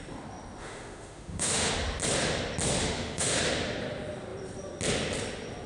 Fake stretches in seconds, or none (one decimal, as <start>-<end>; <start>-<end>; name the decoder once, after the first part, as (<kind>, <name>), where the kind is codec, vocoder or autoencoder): 0.6-1.7 (autoencoder, DAC-VAE); 2.8-3.3